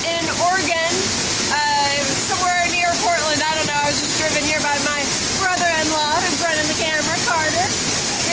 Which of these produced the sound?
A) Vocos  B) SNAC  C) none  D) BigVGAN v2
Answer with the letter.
C